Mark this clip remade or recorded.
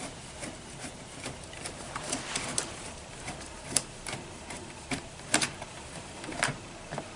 remade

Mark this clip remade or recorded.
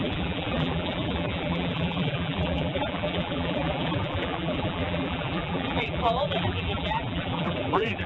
remade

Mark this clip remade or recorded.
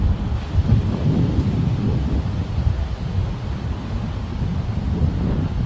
recorded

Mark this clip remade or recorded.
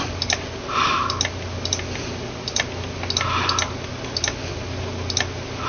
recorded